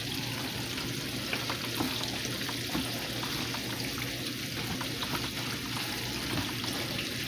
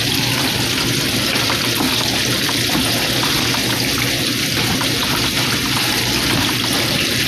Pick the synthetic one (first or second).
second